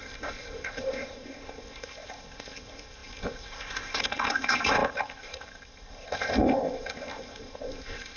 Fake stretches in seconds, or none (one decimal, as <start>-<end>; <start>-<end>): 0.0-8.2